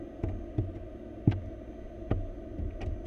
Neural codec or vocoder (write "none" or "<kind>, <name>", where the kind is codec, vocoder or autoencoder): none